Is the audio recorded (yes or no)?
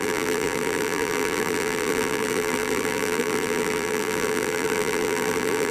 no